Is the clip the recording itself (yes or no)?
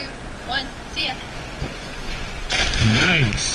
no